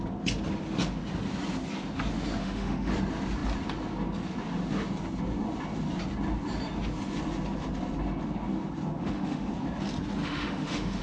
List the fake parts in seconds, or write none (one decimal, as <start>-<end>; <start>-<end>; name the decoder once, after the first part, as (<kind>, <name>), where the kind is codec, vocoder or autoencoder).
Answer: 2.4-2.9 (autoencoder, DAC-VAE); 9.0-9.5; 10.2-11.0